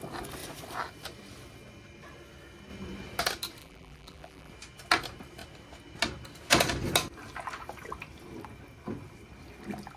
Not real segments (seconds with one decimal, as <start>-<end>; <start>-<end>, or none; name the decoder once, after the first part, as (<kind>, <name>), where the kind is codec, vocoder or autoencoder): 3.6-4.5 (vocoder, BigVGAN v2)